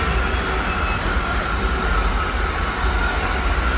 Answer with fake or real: real